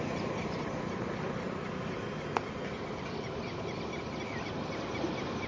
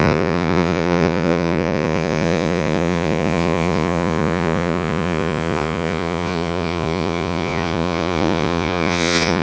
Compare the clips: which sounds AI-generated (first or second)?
second